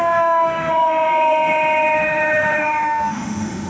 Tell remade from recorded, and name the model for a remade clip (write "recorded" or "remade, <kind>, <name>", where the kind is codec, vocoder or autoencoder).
remade, autoencoder, DAC-VAE